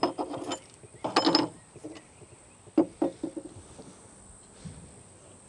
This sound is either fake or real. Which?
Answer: real